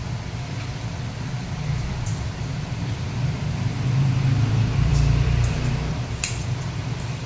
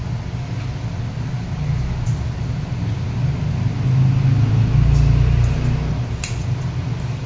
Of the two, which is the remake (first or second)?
first